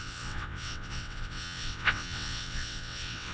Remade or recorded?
remade